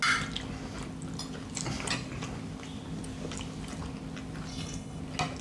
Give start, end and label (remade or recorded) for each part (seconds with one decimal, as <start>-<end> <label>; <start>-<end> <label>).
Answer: 0.0-4.5 recorded; 4.5-5.0 remade; 5.0-5.4 recorded